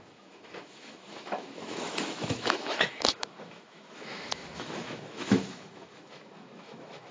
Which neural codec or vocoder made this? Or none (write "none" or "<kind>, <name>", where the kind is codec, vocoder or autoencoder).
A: autoencoder, DAC-VAE